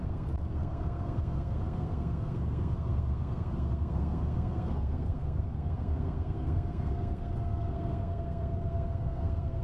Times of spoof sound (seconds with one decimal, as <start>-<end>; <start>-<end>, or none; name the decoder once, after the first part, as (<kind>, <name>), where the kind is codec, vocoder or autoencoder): 0.0-9.6 (codec, SNAC)